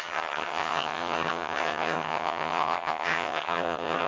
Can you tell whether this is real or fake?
fake